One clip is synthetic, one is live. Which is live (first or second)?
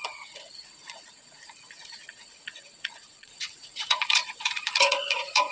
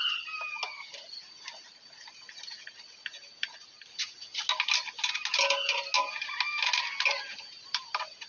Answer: second